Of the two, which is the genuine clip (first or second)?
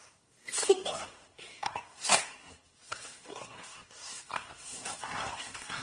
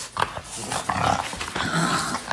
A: second